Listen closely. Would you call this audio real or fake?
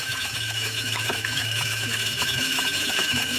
fake